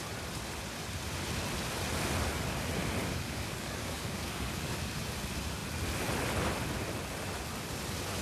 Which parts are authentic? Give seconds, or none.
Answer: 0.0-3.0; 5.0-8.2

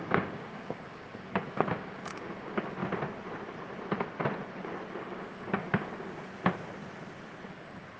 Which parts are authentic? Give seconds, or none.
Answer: 2.8-5.0; 6.2-7.5

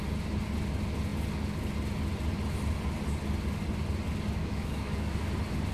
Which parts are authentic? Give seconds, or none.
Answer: 0.0-4.4; 5.3-5.7

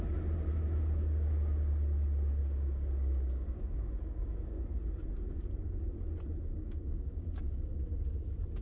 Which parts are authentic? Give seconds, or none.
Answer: 0.0-2.4; 4.6-6.5; 7.4-8.6

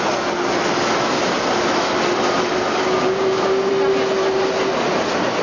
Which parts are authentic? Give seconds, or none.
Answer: 0.0-2.7; 3.7-5.4

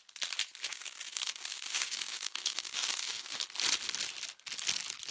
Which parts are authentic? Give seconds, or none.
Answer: 0.0-0.6; 3.4-5.1

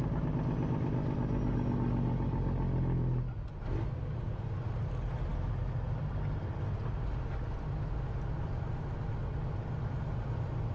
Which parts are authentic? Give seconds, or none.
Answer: 0.0-10.7